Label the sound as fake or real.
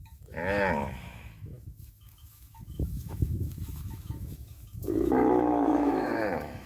fake